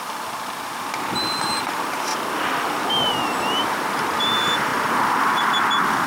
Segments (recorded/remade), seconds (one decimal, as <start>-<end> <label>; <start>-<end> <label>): 0.0-2.1 remade; 2.1-3.1 recorded; 3.1-4.7 remade; 4.7-6.1 recorded